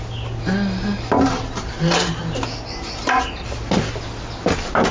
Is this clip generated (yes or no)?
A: no